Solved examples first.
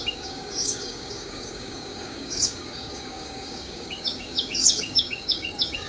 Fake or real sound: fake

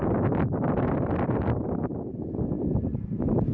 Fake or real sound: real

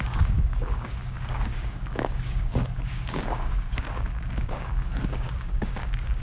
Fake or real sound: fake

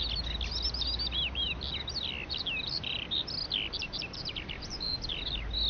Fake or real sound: real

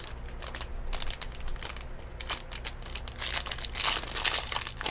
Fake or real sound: real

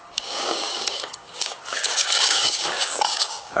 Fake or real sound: fake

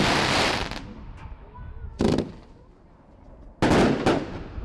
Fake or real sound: real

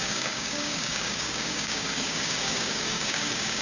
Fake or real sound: fake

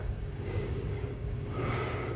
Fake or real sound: fake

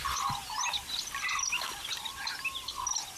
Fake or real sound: real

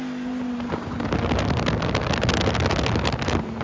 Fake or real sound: real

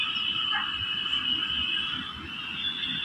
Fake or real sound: real